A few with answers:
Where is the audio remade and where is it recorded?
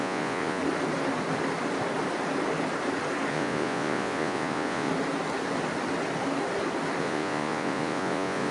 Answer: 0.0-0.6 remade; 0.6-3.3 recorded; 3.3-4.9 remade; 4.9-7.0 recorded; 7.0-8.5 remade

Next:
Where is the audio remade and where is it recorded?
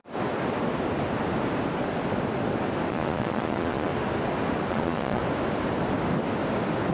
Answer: 0.0-2.9 recorded; 2.9-3.9 remade; 3.9-4.7 recorded; 4.7-5.2 remade; 5.2-6.9 recorded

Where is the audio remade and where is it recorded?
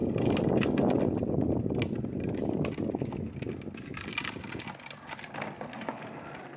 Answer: 0.0-6.6 recorded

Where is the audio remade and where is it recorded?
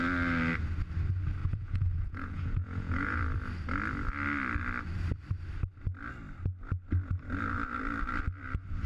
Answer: 0.0-1.4 recorded; 1.4-3.2 remade; 3.2-8.9 recorded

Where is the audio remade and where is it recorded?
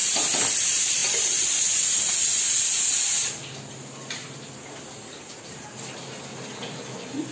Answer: 0.0-7.3 recorded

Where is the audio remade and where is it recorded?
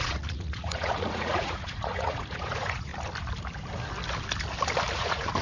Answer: 0.0-2.9 remade; 2.9-4.9 recorded; 4.9-5.4 remade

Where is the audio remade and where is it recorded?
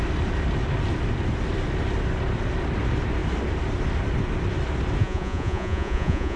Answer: 0.0-5.0 recorded; 5.0-6.4 remade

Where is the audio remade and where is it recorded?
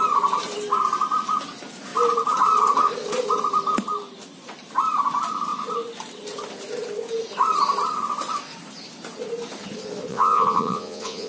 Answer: 0.0-10.1 recorded; 10.1-11.3 remade